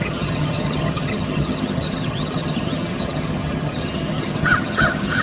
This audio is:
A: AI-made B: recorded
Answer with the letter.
A